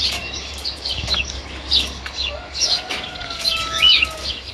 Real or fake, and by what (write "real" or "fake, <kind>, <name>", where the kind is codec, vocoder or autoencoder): fake, codec, DAC